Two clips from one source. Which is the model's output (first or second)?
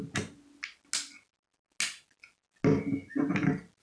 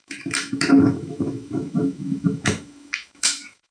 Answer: second